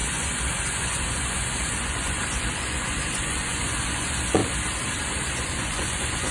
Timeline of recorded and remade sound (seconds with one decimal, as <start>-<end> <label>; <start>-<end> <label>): 0.0-4.4 remade; 4.4-5.0 recorded; 5.0-6.3 remade